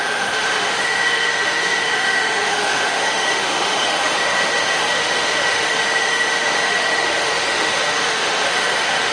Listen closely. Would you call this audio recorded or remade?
remade